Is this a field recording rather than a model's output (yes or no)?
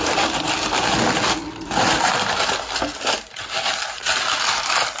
yes